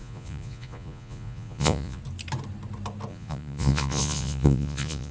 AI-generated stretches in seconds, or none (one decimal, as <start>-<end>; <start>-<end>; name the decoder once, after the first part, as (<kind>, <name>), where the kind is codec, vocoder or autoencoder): 0.0-2.0 (vocoder, Vocos); 3.1-5.1